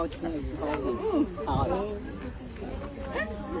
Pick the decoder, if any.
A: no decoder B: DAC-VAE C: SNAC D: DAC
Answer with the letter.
A